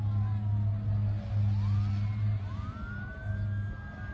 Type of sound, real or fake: real